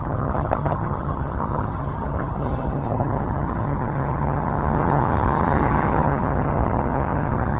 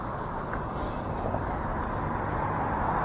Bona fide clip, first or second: second